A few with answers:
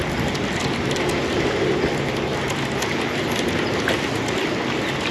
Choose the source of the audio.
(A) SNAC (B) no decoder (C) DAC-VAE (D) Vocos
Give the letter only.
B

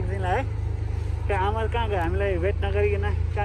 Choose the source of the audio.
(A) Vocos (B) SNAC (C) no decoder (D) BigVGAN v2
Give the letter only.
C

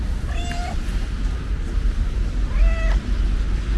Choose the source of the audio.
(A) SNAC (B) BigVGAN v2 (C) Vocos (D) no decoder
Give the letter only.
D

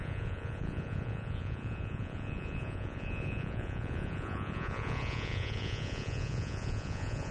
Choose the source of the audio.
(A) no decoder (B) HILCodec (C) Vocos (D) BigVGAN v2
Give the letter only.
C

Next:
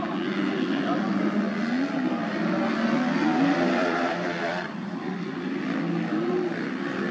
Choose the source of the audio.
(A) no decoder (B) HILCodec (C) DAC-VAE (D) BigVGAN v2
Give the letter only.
A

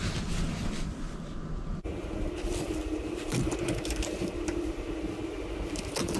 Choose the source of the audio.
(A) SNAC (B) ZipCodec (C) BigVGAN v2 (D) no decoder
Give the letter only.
D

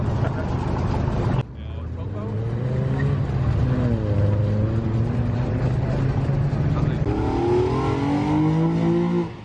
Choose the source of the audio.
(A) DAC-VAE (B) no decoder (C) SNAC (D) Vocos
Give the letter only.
B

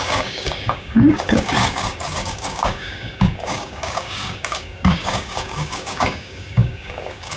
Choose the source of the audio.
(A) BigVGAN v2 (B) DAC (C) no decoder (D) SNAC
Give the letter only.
B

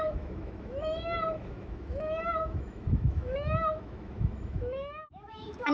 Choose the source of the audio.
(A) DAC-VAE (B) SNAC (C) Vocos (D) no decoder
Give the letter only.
A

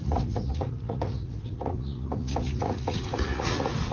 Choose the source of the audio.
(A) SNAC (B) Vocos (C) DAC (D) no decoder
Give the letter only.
B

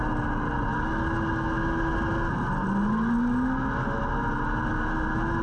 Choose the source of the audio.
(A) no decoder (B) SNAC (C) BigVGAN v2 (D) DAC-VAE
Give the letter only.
A